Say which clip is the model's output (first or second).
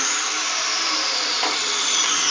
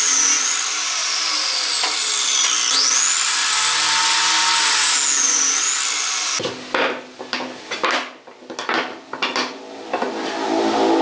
first